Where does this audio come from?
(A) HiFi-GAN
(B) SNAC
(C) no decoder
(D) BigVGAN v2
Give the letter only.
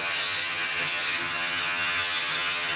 A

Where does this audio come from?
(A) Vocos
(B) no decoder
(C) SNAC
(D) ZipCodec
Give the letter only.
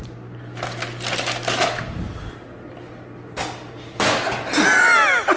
B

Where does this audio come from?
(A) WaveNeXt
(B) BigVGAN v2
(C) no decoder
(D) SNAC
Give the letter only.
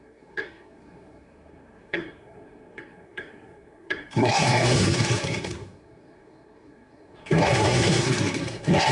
D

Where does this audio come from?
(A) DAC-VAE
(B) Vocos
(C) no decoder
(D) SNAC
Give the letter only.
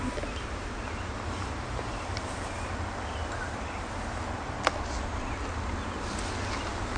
C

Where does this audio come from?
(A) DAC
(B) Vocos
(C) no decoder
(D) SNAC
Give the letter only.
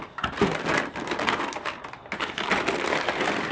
C